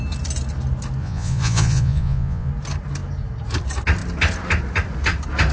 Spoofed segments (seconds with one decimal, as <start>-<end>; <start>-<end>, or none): 1.0-2.5